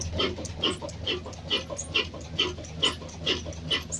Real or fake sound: real